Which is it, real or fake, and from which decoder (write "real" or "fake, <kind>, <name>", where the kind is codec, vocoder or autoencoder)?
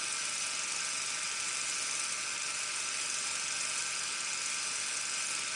real